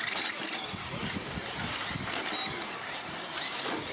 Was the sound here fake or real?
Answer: real